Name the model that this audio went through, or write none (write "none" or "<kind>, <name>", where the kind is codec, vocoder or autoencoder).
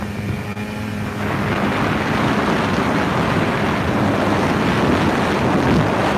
none